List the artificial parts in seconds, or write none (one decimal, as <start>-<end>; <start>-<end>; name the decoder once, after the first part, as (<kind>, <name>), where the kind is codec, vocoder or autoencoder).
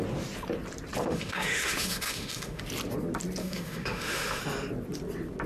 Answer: 1.0-2.6 (autoencoder, DAC-VAE); 3.4-4.4